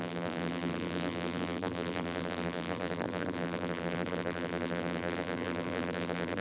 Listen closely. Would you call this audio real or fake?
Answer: fake